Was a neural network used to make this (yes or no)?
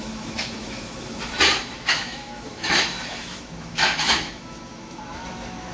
yes